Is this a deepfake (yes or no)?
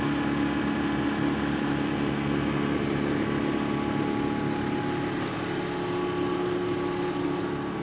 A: no